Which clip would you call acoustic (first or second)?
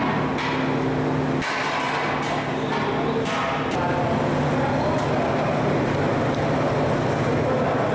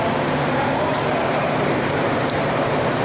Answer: first